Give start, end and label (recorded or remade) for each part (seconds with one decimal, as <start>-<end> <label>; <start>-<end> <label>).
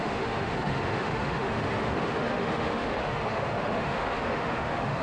0.0-5.0 remade